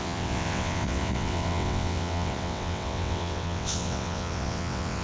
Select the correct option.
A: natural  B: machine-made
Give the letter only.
B